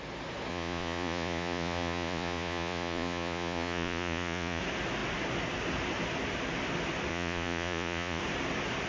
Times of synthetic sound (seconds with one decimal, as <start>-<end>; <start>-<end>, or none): 0.5-4.6; 7.1-8.2